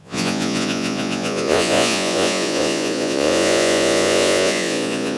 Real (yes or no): no